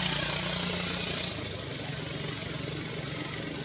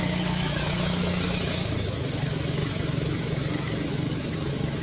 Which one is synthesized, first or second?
second